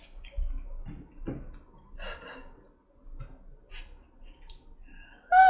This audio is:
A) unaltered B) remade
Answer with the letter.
A